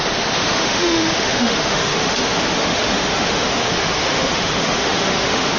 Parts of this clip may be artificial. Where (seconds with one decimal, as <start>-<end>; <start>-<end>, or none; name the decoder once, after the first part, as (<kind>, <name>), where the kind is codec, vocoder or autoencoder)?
0.0-5.6 (autoencoder, DAC-VAE)